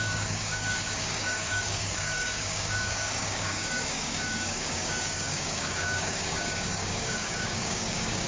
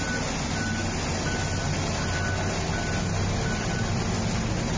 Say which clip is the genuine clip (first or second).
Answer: second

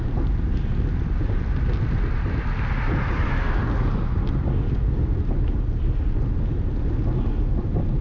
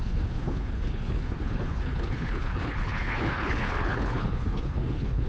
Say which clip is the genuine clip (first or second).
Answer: first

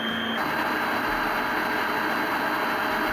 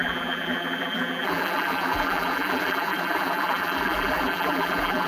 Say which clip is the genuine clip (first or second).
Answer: first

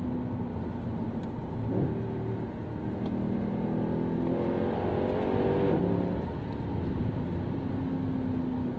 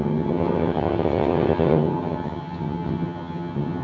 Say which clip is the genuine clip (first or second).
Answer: first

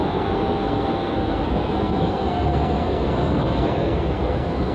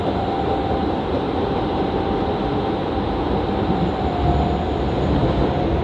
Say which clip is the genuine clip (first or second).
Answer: second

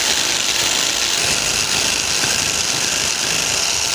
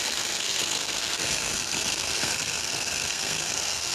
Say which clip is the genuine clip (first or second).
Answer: first